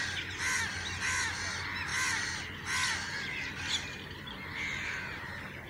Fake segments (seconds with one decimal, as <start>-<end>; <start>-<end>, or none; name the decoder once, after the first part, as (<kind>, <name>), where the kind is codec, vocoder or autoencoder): none